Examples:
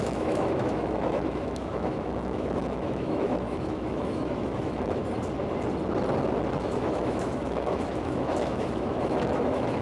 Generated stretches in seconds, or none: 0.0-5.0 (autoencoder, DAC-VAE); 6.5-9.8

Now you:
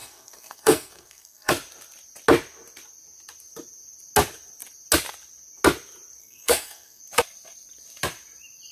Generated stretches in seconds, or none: 0.0-1.5 (codec, SNAC); 6.2-7.0

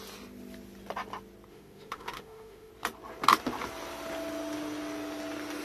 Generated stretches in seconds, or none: 1.5-2.7 (autoencoder, DAC-VAE)